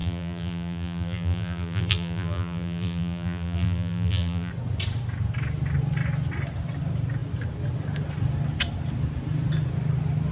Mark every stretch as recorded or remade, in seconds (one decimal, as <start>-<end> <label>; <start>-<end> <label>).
0.0-4.5 remade; 4.5-10.3 recorded